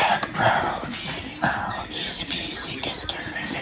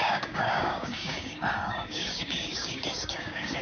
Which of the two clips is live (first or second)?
first